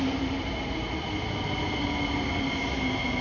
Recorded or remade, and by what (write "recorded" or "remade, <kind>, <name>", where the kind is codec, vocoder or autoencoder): recorded